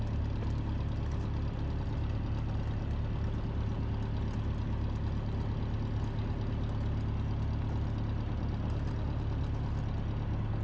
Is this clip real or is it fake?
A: real